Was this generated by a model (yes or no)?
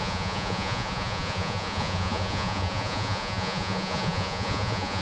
yes